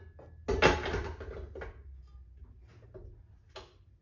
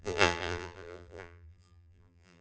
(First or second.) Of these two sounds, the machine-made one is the second